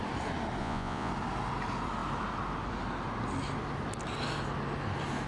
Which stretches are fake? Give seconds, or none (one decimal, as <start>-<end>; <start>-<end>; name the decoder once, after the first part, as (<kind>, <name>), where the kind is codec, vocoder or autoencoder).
0.6-1.1 (vocoder, Vocos)